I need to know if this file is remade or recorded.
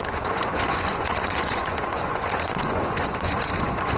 remade